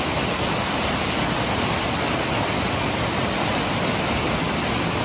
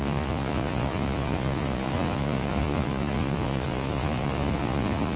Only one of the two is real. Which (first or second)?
first